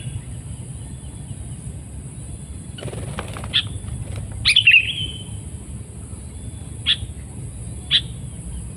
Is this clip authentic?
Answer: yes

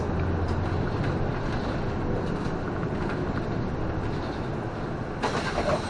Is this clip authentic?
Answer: yes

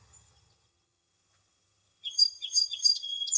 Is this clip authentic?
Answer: no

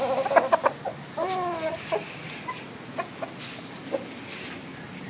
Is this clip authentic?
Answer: yes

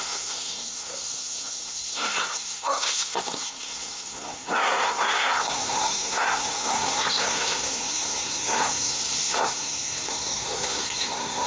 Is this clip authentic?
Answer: no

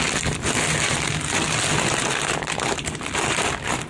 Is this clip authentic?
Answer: yes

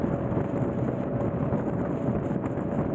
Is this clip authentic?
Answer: yes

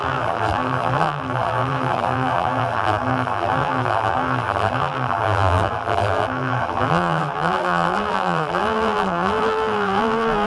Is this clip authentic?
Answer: no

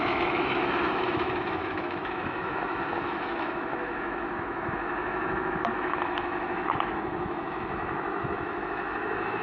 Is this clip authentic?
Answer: no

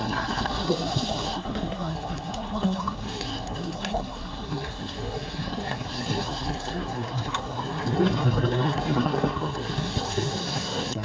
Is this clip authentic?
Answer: no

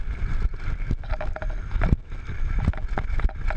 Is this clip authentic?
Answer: yes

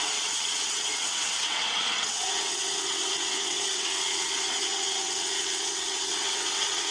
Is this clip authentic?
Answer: no